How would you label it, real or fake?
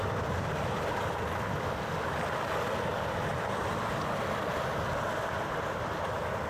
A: real